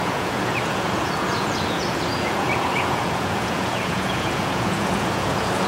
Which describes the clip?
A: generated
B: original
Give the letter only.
A